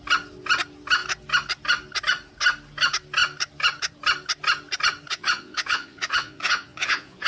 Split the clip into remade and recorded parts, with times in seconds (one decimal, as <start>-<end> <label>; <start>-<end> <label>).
0.0-5.1 recorded; 5.1-7.3 remade

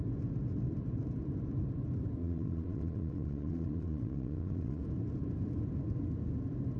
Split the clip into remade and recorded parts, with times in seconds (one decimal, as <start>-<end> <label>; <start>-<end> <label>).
0.0-2.2 recorded; 2.2-4.8 remade; 4.8-6.8 recorded

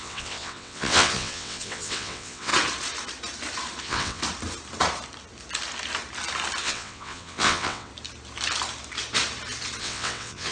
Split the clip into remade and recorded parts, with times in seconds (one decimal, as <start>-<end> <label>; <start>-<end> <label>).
0.0-2.5 remade; 2.5-3.8 recorded; 3.8-4.2 remade; 4.2-6.6 recorded; 6.6-7.9 remade; 7.9-9.8 recorded; 9.8-10.5 remade

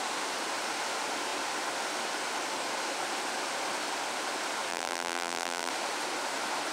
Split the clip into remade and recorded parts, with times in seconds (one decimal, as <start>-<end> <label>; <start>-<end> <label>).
0.0-4.7 recorded; 4.7-5.7 remade; 5.7-6.7 recorded

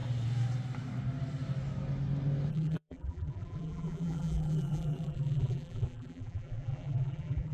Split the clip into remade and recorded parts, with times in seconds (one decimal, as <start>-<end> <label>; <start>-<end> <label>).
0.0-2.5 recorded; 2.5-7.5 remade

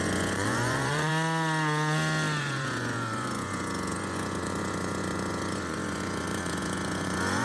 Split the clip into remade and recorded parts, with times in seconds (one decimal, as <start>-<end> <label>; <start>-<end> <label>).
0.0-1.1 remade; 1.1-2.4 recorded; 2.4-7.4 remade

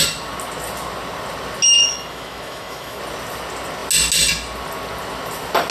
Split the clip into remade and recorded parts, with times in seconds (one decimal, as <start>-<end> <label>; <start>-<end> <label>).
0.0-1.8 recorded; 1.8-3.0 remade; 3.0-5.7 recorded

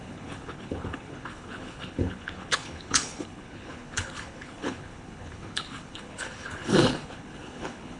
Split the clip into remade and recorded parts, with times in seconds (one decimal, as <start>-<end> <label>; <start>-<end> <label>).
0.0-8.0 remade